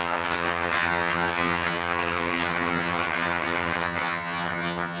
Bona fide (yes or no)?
no